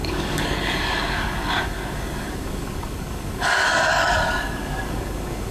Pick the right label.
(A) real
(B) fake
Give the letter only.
B